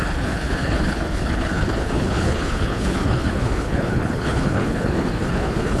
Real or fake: fake